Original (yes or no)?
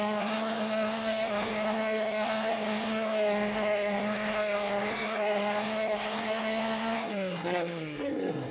no